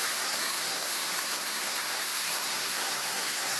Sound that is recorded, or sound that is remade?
remade